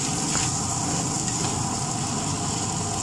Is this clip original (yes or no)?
yes